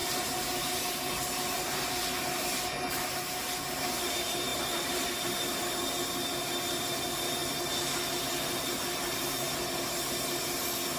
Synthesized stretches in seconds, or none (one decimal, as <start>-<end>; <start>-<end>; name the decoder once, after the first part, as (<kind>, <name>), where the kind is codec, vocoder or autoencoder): 0.0-4.1 (vocoder, BigVGAN v2); 4.5-5.1